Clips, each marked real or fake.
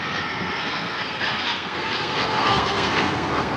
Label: fake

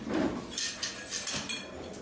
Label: real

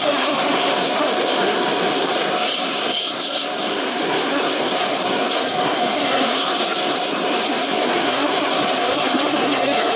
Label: fake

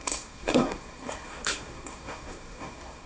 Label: fake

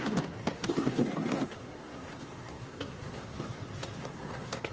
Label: fake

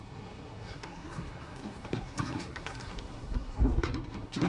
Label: fake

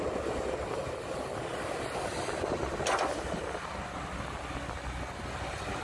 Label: real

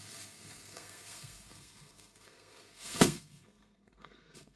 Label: fake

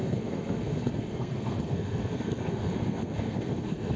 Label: fake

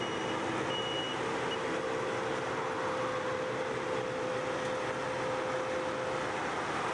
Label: real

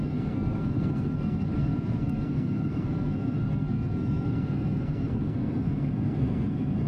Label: fake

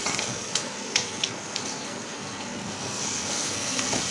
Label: fake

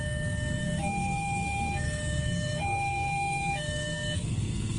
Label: fake